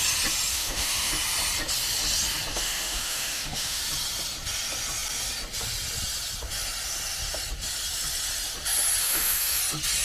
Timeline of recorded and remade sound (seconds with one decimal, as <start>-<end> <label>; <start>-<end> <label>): 0.0-0.5 recorded; 0.5-1.1 remade; 1.1-2.5 recorded; 2.5-3.8 remade; 3.8-9.0 recorded; 9.0-9.6 remade; 9.6-10.0 recorded